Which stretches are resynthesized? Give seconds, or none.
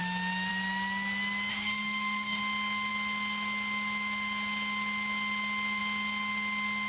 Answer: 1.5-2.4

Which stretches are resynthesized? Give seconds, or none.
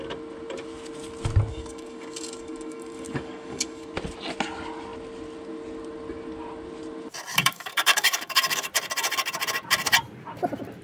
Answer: 1.5-3.9; 7.3-8.7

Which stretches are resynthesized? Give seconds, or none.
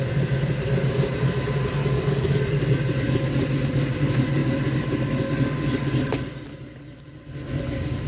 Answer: 1.8-2.3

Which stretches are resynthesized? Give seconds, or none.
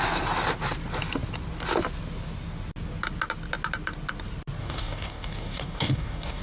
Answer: 4.6-6.4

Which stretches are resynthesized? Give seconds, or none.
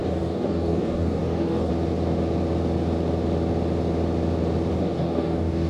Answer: 0.0-1.7; 4.7-5.7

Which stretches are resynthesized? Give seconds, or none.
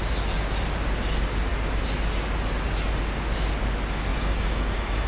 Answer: 4.1-5.1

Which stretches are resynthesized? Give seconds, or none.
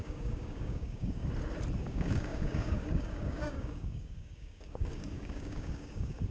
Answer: 0.0-1.2; 1.8-6.3